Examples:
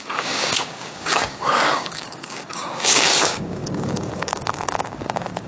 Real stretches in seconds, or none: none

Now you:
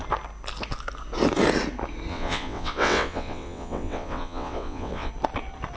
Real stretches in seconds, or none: 0.0-2.1; 5.1-5.8

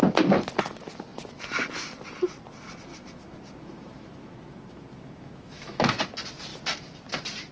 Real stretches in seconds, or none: 0.0-2.9; 6.0-7.5

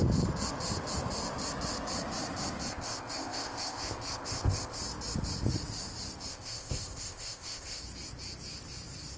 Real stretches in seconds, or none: 0.0-2.7; 4.8-6.3; 7.8-9.2

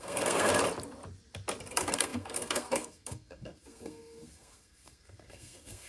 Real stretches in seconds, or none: 0.5-1.7

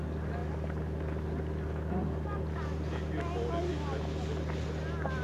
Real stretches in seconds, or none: 0.0-5.2